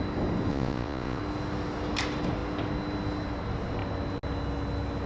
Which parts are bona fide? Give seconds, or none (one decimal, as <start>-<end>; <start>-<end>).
0.0-0.5; 1.2-5.1